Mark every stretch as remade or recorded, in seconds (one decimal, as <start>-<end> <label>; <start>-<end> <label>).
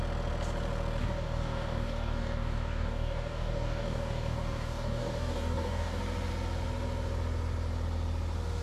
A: 0.0-1.0 recorded; 1.0-6.0 remade; 6.0-8.6 recorded